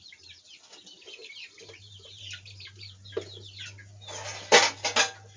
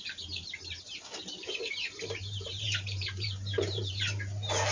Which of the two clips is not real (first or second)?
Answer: second